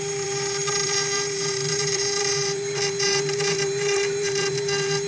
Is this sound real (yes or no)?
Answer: no